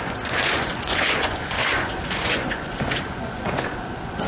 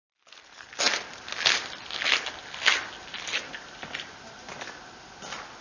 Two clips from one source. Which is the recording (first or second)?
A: second